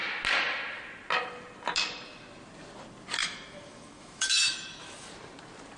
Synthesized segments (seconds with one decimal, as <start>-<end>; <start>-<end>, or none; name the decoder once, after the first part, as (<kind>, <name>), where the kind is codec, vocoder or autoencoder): 3.2-5.1 (autoencoder, DAC-VAE)